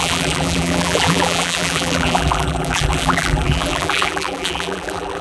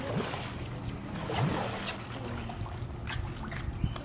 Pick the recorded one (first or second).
second